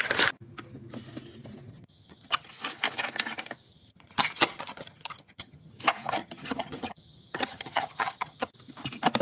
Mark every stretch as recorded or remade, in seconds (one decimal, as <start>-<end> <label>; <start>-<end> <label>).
0.0-1.7 recorded; 1.7-2.5 remade; 2.5-3.7 recorded; 3.7-5.7 remade; 5.7-6.2 recorded; 6.2-8.5 remade; 8.5-9.2 recorded